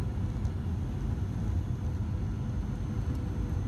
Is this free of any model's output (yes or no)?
yes